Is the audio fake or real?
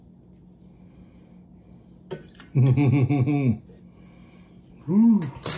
real